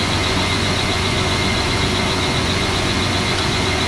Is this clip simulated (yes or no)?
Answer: yes